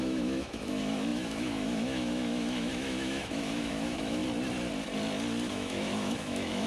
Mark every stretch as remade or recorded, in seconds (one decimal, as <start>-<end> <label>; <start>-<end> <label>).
0.0-4.2 remade; 4.2-5.5 recorded; 5.5-6.7 remade